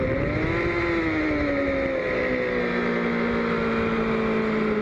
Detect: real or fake real